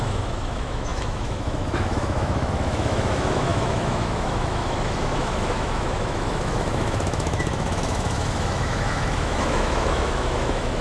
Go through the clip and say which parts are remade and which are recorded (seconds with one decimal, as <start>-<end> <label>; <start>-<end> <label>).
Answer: 0.0-10.8 remade